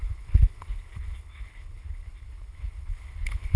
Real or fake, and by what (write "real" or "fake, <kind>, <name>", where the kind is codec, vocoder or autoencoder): fake, codec, HILCodec